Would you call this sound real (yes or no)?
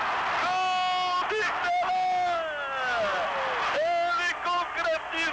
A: yes